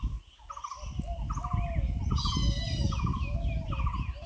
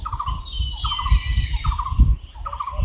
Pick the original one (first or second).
first